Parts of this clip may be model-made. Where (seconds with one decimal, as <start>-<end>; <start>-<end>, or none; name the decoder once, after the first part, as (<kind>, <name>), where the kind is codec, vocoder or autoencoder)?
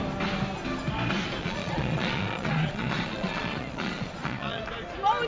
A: 1.4-4.6 (vocoder, Vocos)